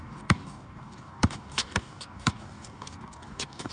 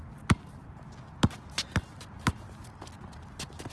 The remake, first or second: first